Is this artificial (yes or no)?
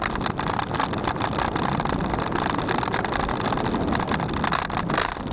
no